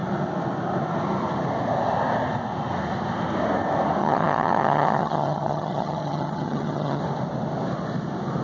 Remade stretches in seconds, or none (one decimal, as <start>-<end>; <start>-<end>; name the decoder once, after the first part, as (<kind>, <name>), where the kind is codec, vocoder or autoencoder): 4.0-7.0 (vocoder, HiFi-GAN)